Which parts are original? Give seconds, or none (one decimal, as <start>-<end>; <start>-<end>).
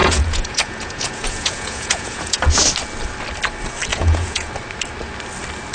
2.5-3.9; 4.5-5.7